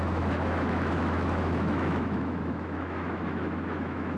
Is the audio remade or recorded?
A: remade